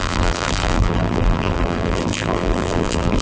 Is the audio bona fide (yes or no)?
no